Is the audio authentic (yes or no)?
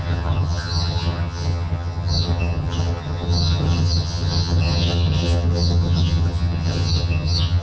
no